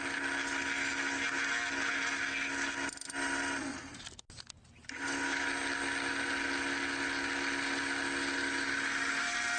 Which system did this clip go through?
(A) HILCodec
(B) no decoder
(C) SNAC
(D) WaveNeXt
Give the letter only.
B